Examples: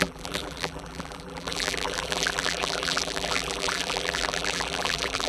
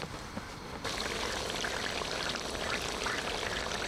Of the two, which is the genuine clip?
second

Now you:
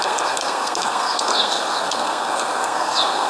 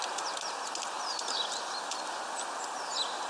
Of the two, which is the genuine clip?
second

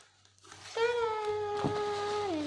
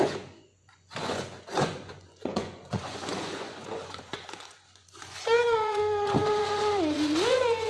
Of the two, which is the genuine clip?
first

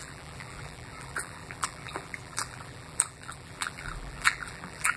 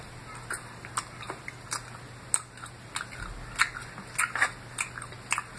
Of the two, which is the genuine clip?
second